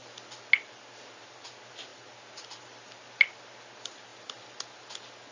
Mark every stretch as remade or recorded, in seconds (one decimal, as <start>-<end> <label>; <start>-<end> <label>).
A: 0.0-5.3 recorded